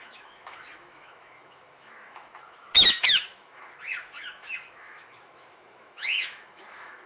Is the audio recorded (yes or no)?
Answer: no